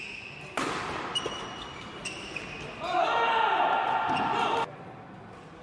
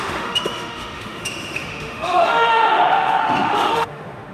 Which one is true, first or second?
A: first